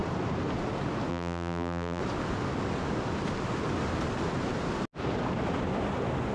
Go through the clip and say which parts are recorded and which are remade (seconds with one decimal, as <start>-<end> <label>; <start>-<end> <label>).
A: 0.0-1.1 recorded; 1.1-2.0 remade; 2.0-6.3 recorded